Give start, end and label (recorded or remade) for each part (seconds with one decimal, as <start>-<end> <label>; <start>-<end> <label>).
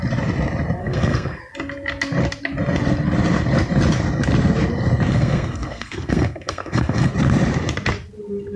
0.0-0.8 recorded; 0.8-1.4 remade; 1.4-5.1 recorded; 5.1-7.1 remade; 7.1-8.6 recorded